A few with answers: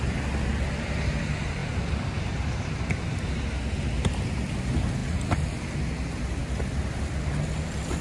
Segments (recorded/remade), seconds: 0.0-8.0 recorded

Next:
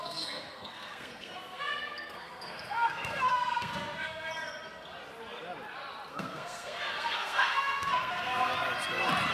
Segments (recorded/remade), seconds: 0.0-4.3 remade; 4.3-6.1 recorded; 6.1-8.5 remade; 8.5-9.3 recorded

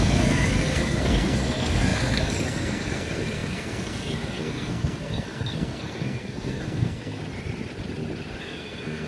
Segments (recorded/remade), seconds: 0.0-7.2 remade; 7.2-8.4 recorded; 8.4-9.1 remade

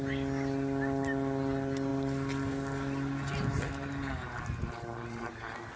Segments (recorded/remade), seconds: 0.0-5.8 recorded

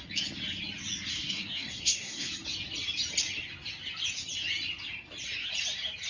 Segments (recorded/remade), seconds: 0.0-1.1 recorded; 1.1-2.3 remade; 2.3-6.1 recorded

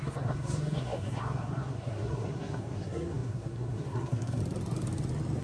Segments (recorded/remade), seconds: 0.0-4.4 remade; 4.4-5.4 recorded

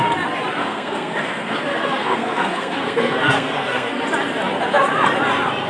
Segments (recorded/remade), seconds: 0.0-0.6 recorded; 0.6-4.0 remade; 4.0-5.7 recorded

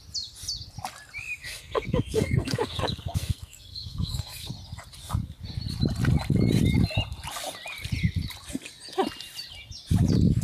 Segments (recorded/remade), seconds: 0.0-1.4 recorded; 1.4-4.5 remade; 4.5-10.4 recorded